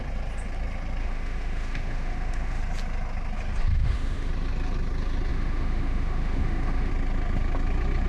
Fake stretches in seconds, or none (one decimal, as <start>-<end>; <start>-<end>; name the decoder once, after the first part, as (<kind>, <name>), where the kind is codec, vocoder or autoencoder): 1.0-2.6 (autoencoder, DAC-VAE); 3.7-4.3; 5.3-6.9